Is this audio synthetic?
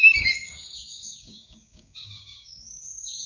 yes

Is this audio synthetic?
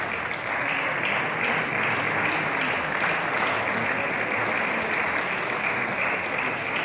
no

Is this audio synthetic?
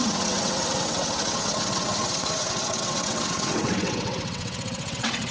yes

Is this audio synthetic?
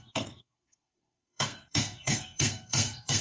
yes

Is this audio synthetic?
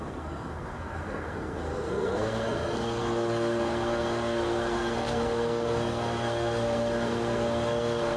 yes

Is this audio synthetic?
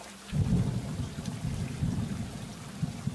yes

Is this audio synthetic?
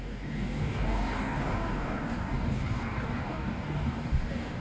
yes